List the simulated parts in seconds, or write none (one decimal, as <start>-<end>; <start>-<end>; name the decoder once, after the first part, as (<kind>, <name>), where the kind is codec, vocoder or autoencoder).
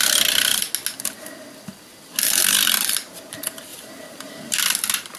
3.7-4.6 (vocoder, BigVGAN v2)